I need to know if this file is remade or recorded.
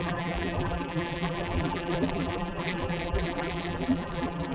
remade